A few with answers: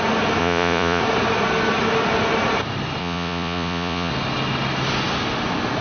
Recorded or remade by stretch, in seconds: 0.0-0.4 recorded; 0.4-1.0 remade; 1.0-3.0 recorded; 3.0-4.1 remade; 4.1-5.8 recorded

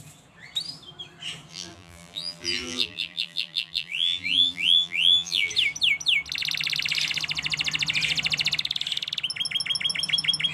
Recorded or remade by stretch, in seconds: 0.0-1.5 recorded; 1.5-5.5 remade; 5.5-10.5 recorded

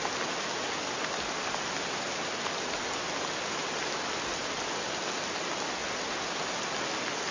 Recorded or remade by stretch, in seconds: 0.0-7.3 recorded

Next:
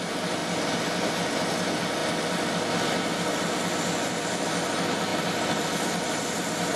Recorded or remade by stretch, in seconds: 0.0-5.1 recorded; 5.1-6.2 remade; 6.2-6.8 recorded